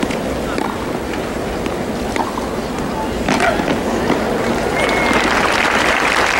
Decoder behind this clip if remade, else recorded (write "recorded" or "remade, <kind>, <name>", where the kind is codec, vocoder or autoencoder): recorded